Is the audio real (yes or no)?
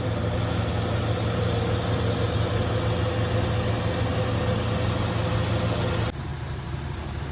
yes